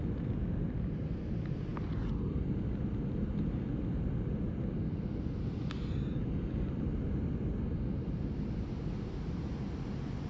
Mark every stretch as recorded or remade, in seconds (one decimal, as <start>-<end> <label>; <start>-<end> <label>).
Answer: 0.0-10.3 recorded